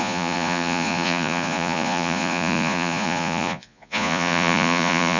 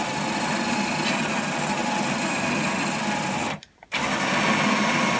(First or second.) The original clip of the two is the second